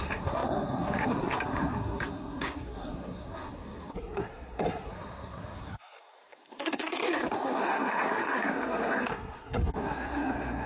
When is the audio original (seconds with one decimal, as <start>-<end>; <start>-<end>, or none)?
none